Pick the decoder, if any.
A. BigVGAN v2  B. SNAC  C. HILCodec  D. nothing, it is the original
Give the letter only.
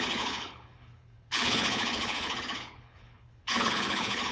C